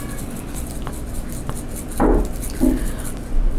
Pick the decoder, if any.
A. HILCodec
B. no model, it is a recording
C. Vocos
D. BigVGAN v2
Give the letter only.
B